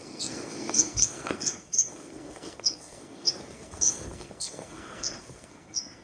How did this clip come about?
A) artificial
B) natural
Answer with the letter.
A